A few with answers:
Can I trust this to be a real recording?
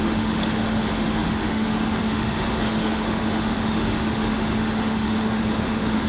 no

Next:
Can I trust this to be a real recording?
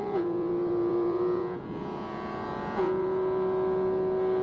no